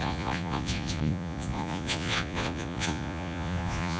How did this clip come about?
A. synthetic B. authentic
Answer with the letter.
A